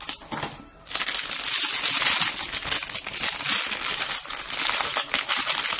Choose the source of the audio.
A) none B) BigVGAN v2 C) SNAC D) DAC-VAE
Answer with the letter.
A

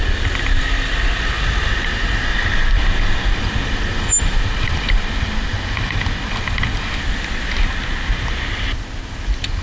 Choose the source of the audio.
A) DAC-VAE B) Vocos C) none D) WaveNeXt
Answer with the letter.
C